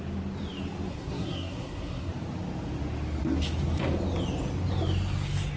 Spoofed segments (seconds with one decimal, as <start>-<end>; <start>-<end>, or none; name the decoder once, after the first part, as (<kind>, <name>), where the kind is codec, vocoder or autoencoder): 0.9-2.1 (codec, SNAC)